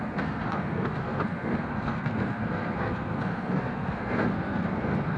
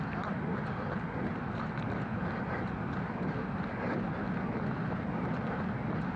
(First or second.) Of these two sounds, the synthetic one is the first